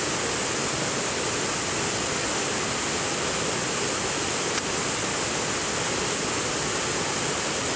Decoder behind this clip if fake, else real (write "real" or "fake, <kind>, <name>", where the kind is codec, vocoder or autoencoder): real